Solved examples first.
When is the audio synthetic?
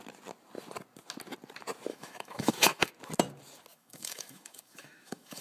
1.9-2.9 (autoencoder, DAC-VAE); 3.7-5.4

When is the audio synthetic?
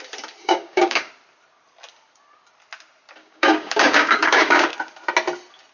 0.4-1.1 (codec, DAC); 3.2-4.7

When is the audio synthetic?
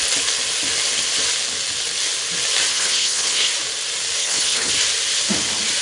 2.7-3.5 (codec, HILCodec); 4.2-4.7